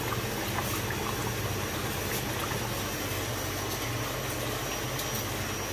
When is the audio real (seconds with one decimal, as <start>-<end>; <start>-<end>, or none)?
0.0-5.7